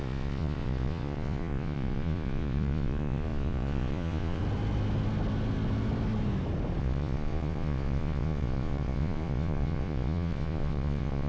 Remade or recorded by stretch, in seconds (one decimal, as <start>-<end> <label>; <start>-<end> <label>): 0.0-4.4 remade; 4.4-6.8 recorded; 6.8-11.3 remade